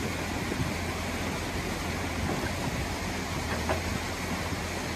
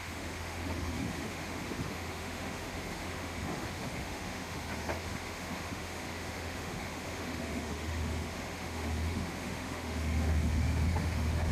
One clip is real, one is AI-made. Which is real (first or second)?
first